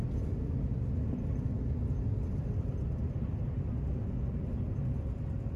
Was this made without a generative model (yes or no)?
yes